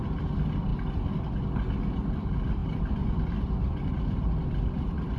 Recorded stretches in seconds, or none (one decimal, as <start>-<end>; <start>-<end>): 0.7-2.1